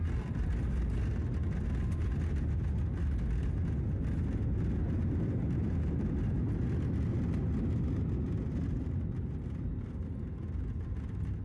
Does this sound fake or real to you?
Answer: real